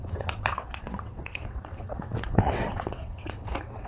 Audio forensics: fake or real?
fake